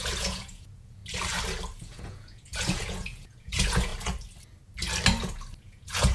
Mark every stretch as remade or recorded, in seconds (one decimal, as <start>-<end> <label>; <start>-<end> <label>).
0.0-1.0 remade; 1.0-1.8 recorded; 1.8-3.9 remade; 3.9-5.6 recorded; 5.6-6.1 remade